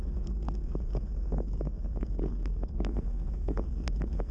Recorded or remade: remade